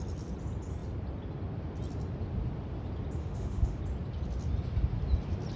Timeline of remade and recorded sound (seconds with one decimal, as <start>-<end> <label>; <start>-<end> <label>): 0.0-3.2 recorded; 3.2-3.8 remade; 3.8-5.6 recorded